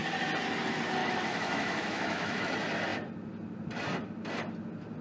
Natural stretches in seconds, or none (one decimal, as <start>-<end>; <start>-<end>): 0.0-1.0; 2.5-5.0